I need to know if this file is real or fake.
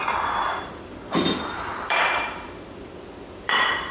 fake